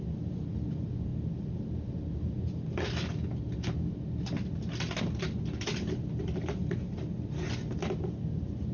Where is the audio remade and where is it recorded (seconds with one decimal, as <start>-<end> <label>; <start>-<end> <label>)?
0.0-8.7 recorded